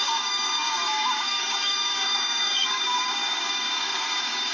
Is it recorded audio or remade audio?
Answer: remade